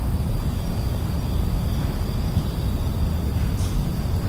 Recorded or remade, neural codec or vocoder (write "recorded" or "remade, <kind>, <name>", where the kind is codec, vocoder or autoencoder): recorded